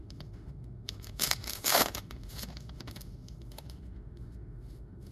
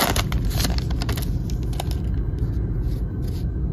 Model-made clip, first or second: first